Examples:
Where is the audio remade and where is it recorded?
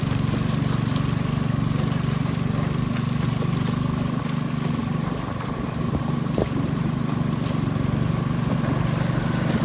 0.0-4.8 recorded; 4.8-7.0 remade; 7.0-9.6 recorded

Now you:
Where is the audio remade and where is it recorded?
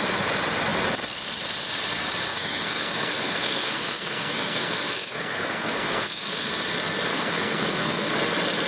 0.0-2.3 recorded; 2.3-6.5 remade; 6.5-7.1 recorded; 7.1-8.1 remade; 8.1-8.7 recorded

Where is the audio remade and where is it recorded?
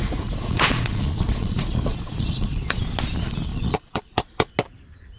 0.0-2.8 remade; 2.8-3.5 recorded; 3.5-4.5 remade; 4.5-5.2 recorded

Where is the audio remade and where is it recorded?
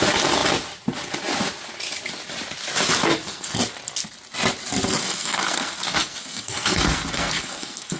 0.0-3.0 recorded; 3.0-3.6 remade; 3.6-5.0 recorded; 5.0-8.0 remade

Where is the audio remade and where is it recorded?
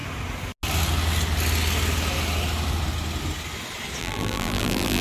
0.0-4.0 recorded; 4.0-5.0 remade